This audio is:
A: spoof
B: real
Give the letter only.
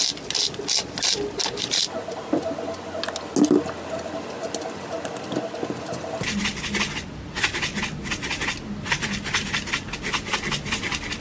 B